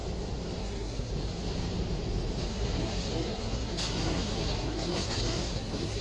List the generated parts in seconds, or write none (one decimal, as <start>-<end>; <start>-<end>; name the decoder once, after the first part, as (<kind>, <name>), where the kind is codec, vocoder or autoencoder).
0.6-1.1 (codec, SNAC); 2.5-6.0